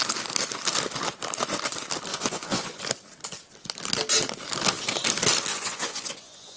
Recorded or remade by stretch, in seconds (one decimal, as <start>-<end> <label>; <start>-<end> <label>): 0.0-2.1 recorded; 2.1-2.8 remade; 2.8-5.5 recorded; 5.5-6.6 remade